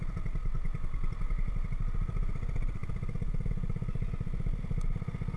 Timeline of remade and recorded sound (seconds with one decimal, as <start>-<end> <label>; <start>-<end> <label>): 0.0-5.4 recorded